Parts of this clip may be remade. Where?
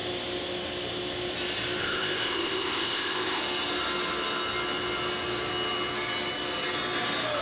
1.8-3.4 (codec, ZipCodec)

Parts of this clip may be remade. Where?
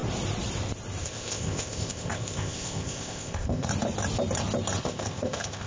1.0-3.7 (codec, ZipCodec); 4.8-5.7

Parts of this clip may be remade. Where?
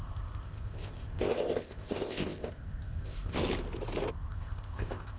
0.0-3.4 (codec, ZipCodec); 4.1-5.2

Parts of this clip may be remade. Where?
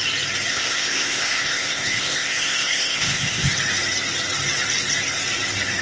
0.5-3.5 (codec, ZipCodec)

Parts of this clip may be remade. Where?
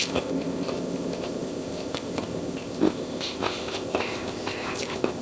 0.0-5.2 (codec, ZipCodec)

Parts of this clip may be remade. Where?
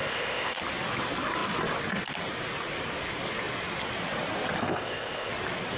0.0-0.6 (codec, ZipCodec); 4.6-5.3